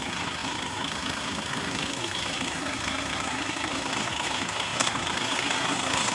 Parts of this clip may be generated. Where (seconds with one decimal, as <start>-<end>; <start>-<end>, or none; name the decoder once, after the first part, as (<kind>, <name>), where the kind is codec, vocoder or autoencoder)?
0.0-6.1 (codec, SNAC)